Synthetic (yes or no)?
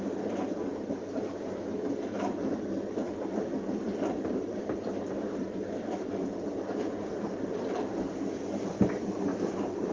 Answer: yes